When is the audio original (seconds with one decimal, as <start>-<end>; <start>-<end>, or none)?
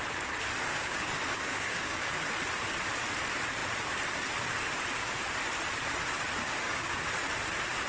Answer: 0.0-0.7; 2.1-6.4; 6.9-7.9